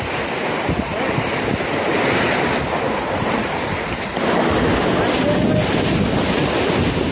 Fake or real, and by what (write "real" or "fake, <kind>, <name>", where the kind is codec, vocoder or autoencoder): real